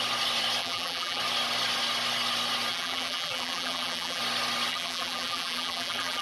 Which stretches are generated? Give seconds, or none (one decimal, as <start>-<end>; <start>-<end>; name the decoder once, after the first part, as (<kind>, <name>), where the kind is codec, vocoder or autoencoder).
0.6-1.2 (vocoder, BigVGAN v2); 2.7-4.2; 4.7-6.2